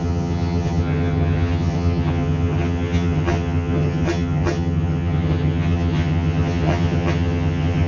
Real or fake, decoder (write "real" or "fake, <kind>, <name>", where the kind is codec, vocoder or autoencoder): fake, vocoder, HiFi-GAN